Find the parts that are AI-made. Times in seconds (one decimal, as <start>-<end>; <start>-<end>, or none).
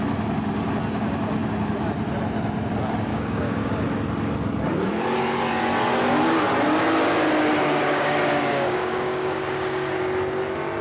3.1-3.7; 7.6-10.0